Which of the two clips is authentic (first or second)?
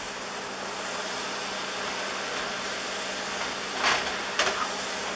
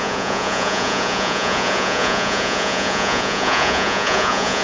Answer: first